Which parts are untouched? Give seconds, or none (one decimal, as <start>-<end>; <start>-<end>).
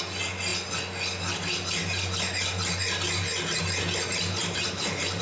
0.0-4.4